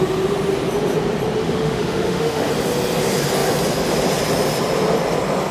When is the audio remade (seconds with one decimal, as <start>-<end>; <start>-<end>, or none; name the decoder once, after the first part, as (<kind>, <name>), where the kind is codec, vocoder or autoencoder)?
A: 1.4-2.5 (autoencoder, DAC-VAE)